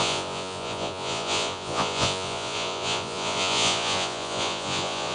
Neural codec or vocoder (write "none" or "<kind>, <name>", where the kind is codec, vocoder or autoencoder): vocoder, Vocos